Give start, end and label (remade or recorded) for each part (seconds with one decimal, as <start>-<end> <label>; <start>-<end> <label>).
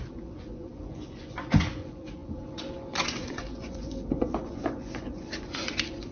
0.0-6.1 remade